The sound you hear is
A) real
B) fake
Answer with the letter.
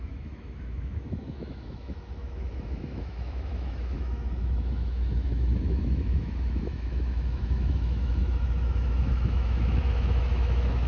B